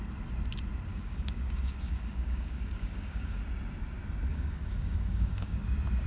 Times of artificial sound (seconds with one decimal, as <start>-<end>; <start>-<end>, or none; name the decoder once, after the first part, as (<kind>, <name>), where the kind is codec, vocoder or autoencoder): 0.9-3.4 (codec, DAC); 4.3-5.6